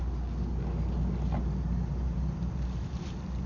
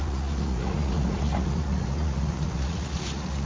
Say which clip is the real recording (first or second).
first